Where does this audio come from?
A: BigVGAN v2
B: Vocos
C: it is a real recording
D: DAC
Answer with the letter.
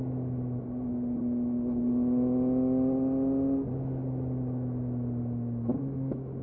C